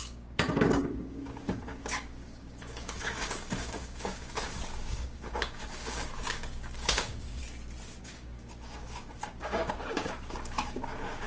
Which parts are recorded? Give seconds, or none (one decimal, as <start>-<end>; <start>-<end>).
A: 7.4-8.0